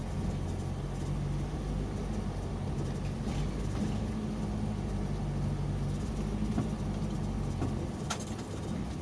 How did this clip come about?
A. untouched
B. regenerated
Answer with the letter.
A